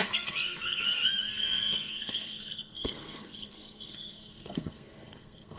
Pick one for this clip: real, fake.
fake